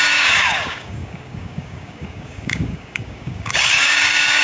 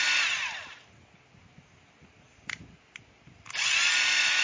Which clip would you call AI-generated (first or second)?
first